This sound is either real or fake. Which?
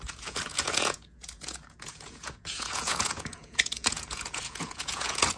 fake